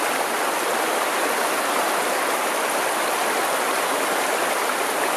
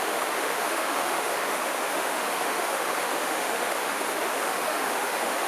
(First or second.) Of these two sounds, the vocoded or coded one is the second